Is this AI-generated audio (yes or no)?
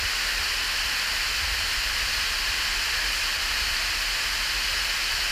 no